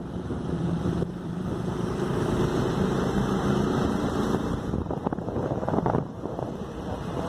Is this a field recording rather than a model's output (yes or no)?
no